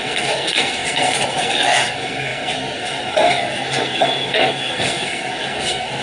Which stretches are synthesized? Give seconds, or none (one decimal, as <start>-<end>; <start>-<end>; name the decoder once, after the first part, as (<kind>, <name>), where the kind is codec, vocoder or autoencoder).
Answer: 0.0-6.0 (codec, SNAC)

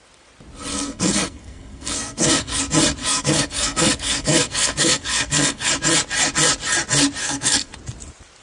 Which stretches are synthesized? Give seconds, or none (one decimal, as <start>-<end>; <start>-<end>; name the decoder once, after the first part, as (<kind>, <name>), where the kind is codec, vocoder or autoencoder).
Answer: 0.7-2.6 (codec, SNAC); 3.0-5.7; 7.2-7.7